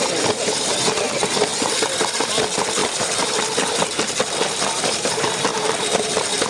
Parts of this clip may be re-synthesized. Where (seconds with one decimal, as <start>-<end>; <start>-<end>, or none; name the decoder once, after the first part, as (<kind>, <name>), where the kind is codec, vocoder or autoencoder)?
1.5-2.3 (vocoder, BigVGAN v2); 2.8-5.1; 5.5-6.1